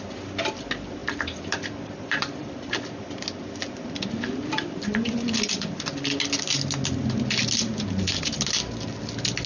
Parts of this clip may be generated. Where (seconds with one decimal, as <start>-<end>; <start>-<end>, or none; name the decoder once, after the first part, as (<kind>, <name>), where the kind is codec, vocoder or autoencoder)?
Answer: 1.0-2.8 (vocoder, BigVGAN v2)